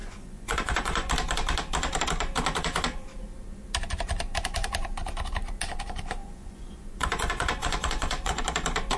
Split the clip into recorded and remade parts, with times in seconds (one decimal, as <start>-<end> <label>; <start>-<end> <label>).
0.0-1.1 remade; 1.1-6.2 recorded; 6.2-8.4 remade; 8.4-9.0 recorded